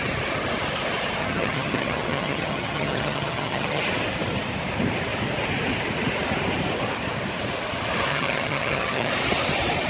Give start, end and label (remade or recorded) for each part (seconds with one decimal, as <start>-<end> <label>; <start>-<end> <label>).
0.0-1.2 recorded; 1.2-3.8 remade; 3.8-8.1 recorded; 8.1-9.1 remade; 9.1-9.9 recorded